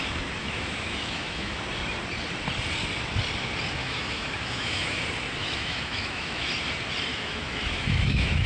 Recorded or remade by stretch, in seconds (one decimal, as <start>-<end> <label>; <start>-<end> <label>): 0.0-0.4 recorded; 0.4-1.6 remade; 1.6-3.8 recorded; 3.8-5.0 remade; 5.0-5.4 recorded; 5.4-6.5 remade; 6.5-7.1 recorded; 7.1-8.5 remade